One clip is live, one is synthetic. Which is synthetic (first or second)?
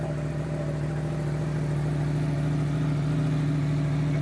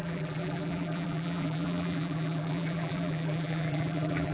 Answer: second